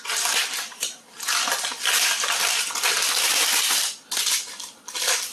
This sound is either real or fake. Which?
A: real